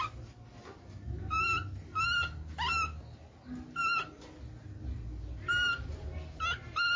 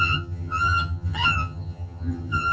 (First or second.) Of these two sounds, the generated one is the second